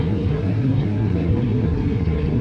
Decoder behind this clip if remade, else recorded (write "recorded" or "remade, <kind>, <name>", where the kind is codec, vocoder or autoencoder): remade, codec, SNAC